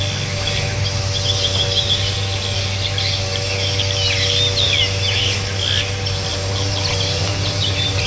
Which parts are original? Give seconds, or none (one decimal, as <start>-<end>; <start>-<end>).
0.0-6.3